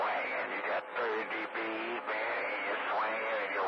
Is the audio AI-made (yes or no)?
no